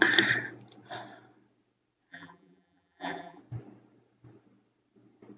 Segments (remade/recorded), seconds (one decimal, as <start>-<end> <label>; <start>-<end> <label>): 0.0-2.1 recorded; 2.1-3.4 remade; 3.4-5.4 recorded